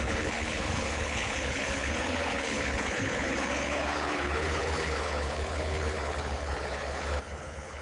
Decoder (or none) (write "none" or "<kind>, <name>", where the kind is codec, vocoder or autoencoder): codec, HILCodec